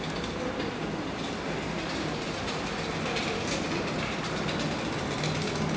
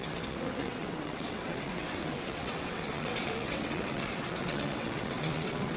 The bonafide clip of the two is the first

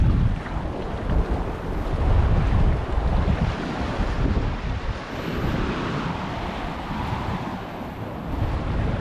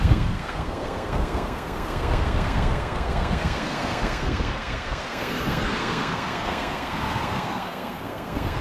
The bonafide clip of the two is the first